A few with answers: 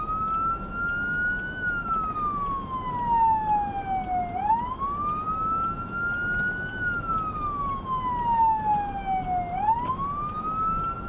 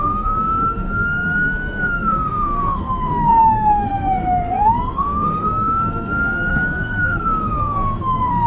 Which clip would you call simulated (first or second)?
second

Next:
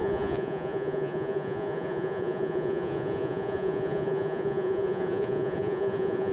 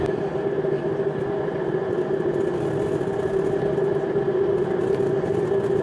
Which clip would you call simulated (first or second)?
first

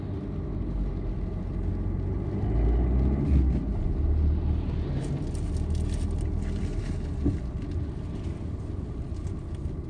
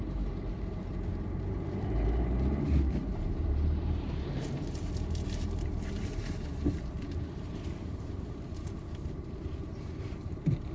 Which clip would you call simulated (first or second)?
second